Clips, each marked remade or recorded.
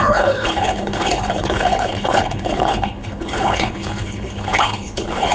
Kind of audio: remade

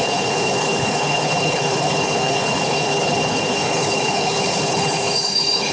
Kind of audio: remade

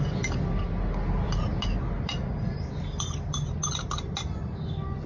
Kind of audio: recorded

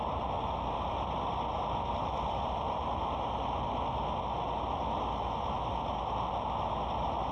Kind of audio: recorded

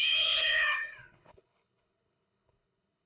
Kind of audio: remade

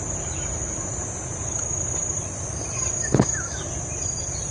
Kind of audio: recorded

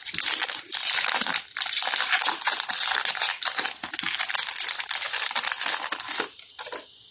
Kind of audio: recorded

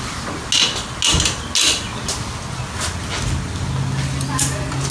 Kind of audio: recorded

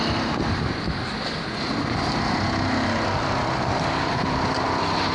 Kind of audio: recorded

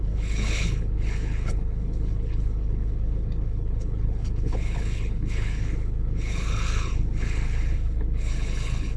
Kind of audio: remade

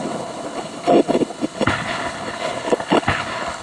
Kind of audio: remade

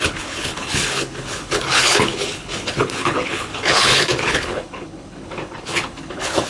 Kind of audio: remade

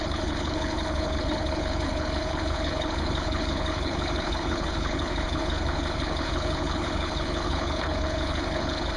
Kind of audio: remade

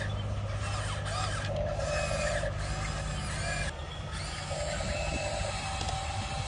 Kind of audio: recorded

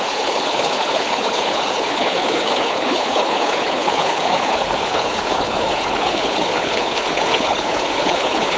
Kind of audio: remade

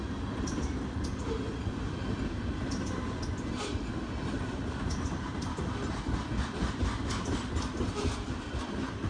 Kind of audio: recorded